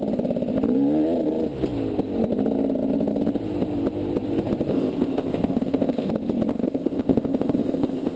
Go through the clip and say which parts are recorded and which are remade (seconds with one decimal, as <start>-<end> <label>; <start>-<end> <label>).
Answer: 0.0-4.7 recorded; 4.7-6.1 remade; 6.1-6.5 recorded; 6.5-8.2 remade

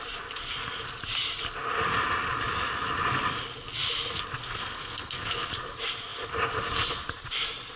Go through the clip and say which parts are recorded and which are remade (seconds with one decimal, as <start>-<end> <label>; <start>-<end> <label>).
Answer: 0.0-4.4 recorded; 4.4-5.5 remade; 5.5-7.8 recorded

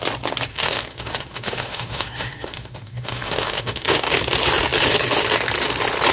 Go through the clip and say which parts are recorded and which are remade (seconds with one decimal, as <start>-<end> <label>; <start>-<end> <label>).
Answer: 0.0-0.5 recorded; 0.5-4.2 remade; 4.2-6.1 recorded

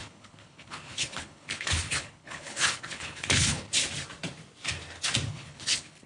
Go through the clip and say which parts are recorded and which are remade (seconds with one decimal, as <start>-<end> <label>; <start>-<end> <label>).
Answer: 0.0-3.7 remade; 3.7-5.3 recorded; 5.3-6.1 remade